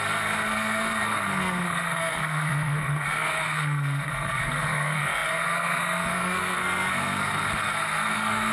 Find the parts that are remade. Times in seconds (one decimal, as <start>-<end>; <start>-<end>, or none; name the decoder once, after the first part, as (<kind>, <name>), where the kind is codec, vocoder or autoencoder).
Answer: 0.0-8.5 (codec, SNAC)

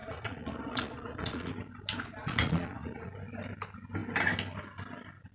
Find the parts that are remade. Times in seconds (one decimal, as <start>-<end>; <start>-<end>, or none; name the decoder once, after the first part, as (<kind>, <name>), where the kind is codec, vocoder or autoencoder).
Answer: 0.0-1.5 (vocoder, Vocos); 2.2-3.1

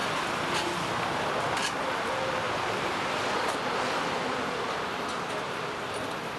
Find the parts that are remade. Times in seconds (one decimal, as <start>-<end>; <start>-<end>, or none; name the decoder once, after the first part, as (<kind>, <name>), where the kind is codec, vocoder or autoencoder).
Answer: 0.0-6.4 (vocoder, BigVGAN v2)

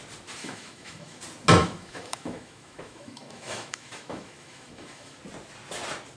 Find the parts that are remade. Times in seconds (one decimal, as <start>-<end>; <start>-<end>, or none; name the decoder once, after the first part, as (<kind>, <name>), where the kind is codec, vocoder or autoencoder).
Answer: 0.4-1.2 (autoencoder, DAC-VAE); 1.6-5.2

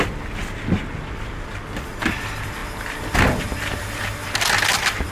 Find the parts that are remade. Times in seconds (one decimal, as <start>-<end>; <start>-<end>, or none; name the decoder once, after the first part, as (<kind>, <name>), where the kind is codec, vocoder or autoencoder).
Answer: none

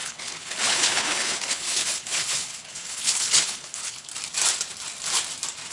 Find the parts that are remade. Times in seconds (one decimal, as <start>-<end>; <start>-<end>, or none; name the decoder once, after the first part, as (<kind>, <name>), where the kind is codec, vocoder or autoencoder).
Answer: 0.0-4.1 (codec, HILCodec)

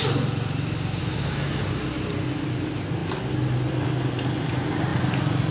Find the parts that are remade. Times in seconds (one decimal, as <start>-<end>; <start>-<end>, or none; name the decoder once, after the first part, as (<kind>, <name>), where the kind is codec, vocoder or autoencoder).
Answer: 1.0-1.6 (autoencoder, DAC-VAE)